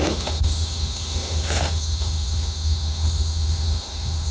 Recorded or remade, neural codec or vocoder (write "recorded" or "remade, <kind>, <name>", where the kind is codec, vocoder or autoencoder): remade, autoencoder, DAC-VAE